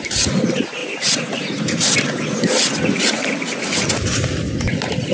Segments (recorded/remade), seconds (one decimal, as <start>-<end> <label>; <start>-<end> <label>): 0.0-5.1 recorded